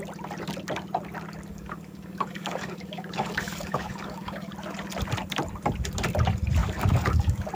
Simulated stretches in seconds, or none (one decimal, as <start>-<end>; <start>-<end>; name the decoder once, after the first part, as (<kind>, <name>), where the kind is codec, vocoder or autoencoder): 1.5-4.5 (codec, DAC); 6.6-7.5